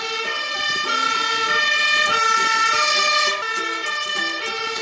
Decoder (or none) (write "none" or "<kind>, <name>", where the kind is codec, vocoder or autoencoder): vocoder, BigVGAN v2